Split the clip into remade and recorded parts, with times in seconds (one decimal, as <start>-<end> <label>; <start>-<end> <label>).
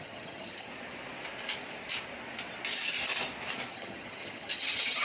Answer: 0.0-0.7 remade; 0.7-3.7 recorded; 3.7-5.0 remade